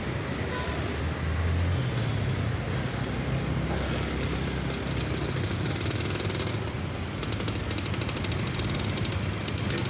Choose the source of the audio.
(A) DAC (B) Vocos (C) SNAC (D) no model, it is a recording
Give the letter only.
D